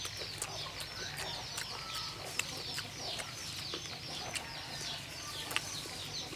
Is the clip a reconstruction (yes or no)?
no